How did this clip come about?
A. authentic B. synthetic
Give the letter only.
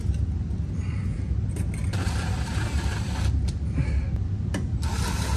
A